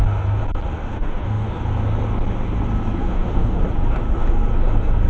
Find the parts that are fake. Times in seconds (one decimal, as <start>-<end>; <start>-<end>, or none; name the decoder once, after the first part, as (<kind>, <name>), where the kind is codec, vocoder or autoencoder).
0.8-1.5 (autoencoder, DAC-VAE); 3.0-3.6